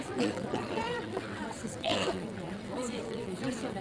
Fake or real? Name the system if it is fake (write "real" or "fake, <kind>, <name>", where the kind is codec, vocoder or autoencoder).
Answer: fake, vocoder, WaveNeXt